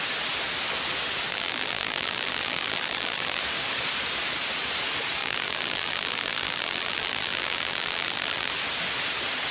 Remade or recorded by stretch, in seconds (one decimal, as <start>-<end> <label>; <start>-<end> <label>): 0.0-1.3 recorded; 1.3-3.4 remade; 3.4-5.2 recorded; 5.2-8.5 remade; 8.5-9.5 recorded